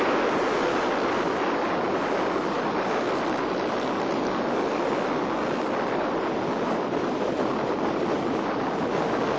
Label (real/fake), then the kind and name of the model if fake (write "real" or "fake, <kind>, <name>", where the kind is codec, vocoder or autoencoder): real